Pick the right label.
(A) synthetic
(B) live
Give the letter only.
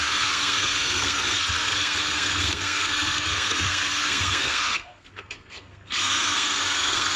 A